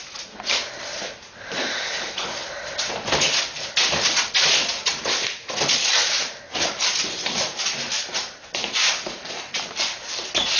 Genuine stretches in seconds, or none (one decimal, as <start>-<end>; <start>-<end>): 6.0-6.6; 8.6-10.6